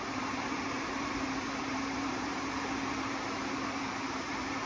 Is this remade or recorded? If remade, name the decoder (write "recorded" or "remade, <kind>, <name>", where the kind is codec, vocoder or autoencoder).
remade, vocoder, BigVGAN v2